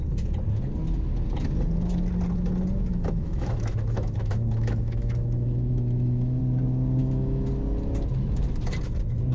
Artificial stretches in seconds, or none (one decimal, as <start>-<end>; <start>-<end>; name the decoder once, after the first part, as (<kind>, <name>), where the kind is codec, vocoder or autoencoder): 2.9-6.4 (autoencoder, DAC-VAE); 7.0-7.5